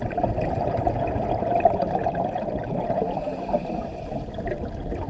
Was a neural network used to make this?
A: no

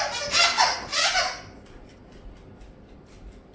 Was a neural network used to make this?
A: no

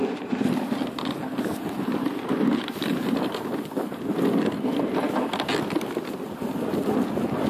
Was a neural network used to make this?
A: no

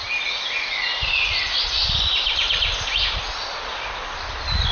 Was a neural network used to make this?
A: no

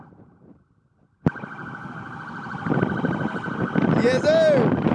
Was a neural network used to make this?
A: no